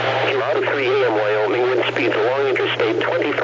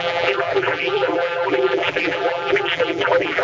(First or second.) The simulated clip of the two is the second